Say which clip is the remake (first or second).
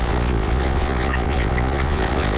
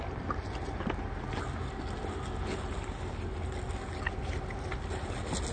first